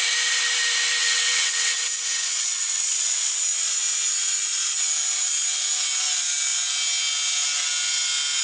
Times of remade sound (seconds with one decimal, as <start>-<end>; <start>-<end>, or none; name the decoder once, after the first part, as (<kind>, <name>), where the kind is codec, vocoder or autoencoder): 1.0-3.3 (vocoder, WaveNeXt)